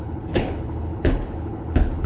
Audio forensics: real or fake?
fake